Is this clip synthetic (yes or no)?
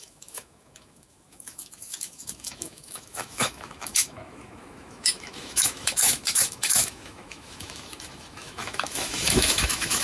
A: yes